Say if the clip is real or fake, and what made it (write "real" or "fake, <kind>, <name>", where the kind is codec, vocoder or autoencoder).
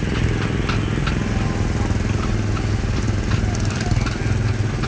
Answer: real